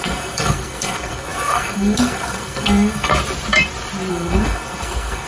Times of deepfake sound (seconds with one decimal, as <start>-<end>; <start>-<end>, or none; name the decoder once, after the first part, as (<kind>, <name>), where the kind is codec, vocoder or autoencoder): 0.0-3.1 (codec, SNAC); 4.1-5.3

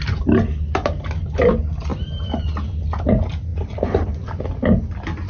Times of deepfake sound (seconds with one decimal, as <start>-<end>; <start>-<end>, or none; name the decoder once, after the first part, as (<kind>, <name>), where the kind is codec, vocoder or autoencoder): none

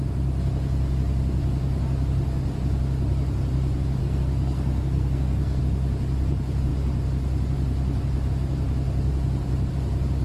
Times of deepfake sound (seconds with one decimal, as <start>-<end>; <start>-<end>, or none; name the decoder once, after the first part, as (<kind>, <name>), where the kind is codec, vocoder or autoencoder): 4.0-5.6 (codec, SNAC)

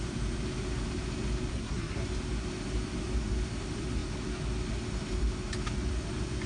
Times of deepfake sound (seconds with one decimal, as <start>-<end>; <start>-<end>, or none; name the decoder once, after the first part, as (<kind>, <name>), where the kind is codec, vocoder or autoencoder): 1.5-2.0 (codec, SNAC)

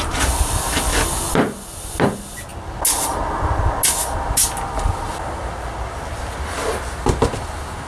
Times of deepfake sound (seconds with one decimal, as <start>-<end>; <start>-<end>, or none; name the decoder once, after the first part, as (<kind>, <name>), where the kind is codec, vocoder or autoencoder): none

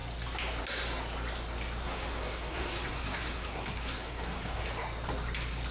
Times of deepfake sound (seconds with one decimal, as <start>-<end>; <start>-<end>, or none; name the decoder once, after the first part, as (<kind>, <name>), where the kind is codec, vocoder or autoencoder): 1.8-4.7 (codec, SNAC)

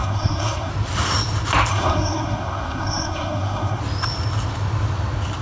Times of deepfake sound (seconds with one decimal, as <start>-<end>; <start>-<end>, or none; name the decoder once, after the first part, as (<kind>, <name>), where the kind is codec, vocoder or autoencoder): 0.0-0.7 (codec, SNAC); 1.7-3.8

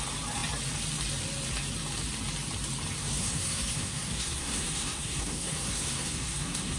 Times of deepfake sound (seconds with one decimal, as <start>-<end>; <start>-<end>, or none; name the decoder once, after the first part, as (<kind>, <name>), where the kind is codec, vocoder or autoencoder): 3.0-6.8 (codec, SNAC)